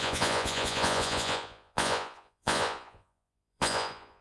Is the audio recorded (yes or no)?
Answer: no